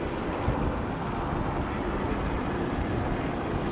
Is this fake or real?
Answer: real